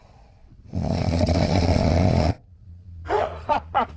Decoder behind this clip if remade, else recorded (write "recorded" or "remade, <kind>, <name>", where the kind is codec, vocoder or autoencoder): remade, vocoder, Vocos